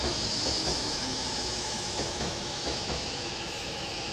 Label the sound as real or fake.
fake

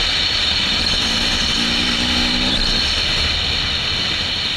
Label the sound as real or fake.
real